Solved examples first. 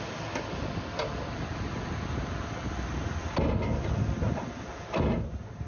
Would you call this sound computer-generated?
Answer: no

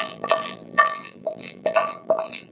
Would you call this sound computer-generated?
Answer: yes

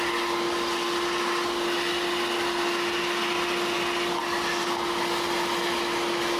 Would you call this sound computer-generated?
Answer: no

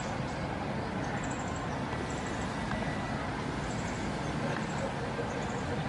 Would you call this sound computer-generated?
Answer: no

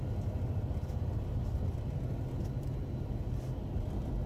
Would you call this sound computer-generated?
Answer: no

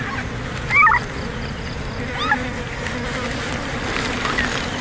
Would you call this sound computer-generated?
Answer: no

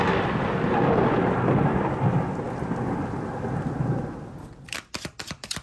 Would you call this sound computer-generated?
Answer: no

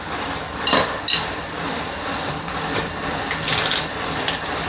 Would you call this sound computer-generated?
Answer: no